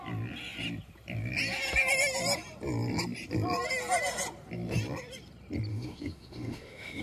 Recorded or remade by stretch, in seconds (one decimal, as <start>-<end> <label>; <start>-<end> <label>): 0.0-5.7 recorded; 5.7-7.0 remade